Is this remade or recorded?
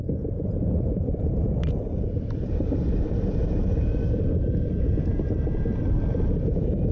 remade